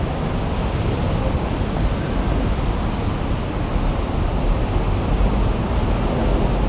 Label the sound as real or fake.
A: real